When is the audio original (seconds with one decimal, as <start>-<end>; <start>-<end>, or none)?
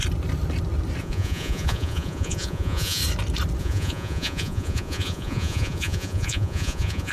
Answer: 0.0-1.0; 3.0-3.6